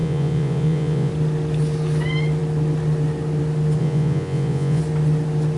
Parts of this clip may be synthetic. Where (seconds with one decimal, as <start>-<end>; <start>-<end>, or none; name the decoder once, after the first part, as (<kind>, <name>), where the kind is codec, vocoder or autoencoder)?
0.0-1.1 (vocoder, Vocos); 3.8-4.8